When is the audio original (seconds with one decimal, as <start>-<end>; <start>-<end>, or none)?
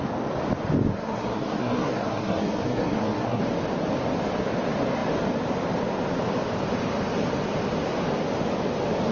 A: 0.0-0.9; 3.4-9.1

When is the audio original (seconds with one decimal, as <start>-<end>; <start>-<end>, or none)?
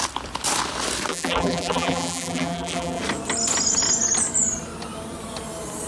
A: 0.0-1.1; 3.0-5.9